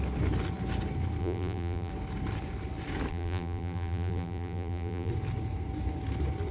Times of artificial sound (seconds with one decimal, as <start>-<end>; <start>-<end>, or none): 1.2-1.9; 3.1-5.1